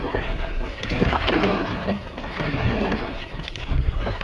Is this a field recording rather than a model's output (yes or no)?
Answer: no